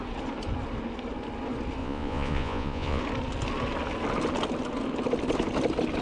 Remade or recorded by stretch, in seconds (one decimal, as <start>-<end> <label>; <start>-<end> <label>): 0.0-1.8 recorded; 1.8-3.0 remade; 3.0-6.0 recorded